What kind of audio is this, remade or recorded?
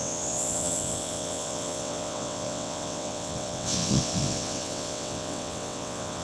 remade